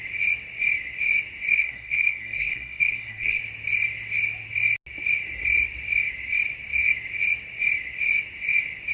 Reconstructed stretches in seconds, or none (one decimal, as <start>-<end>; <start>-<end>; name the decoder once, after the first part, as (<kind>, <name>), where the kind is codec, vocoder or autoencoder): 1.5-3.4 (codec, SNAC)